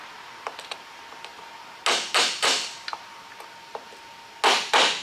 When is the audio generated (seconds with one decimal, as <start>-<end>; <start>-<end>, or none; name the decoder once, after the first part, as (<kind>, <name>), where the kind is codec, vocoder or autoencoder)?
none

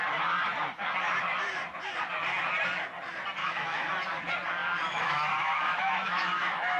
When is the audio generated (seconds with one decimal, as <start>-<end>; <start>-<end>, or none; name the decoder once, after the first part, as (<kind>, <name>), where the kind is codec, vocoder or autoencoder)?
3.4-3.9 (autoencoder, DAC-VAE); 4.6-6.8